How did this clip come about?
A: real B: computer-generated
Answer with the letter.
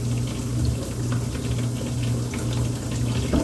A